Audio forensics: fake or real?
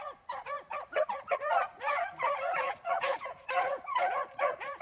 fake